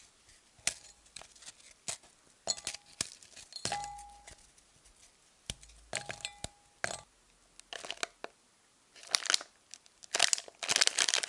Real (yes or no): yes